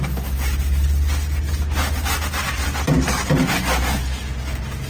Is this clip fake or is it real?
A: real